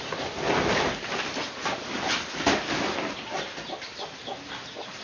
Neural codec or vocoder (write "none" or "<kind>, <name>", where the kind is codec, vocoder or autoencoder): none